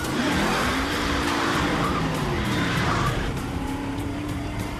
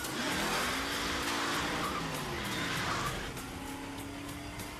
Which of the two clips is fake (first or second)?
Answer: first